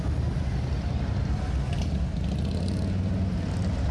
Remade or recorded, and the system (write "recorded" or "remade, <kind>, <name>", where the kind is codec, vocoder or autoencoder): recorded